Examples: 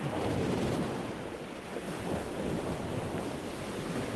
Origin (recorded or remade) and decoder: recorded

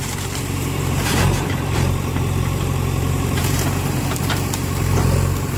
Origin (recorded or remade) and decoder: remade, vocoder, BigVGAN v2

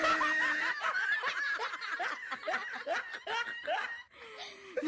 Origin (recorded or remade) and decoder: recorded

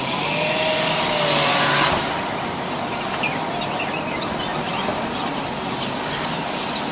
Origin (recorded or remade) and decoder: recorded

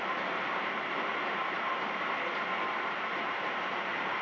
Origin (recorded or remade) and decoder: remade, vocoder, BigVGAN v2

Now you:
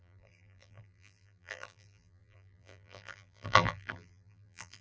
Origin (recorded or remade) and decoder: remade, vocoder, BigVGAN v2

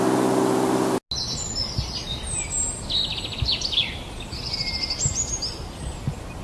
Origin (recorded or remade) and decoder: recorded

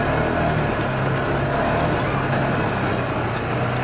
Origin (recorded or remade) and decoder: recorded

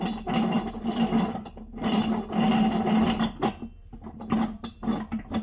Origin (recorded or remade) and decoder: recorded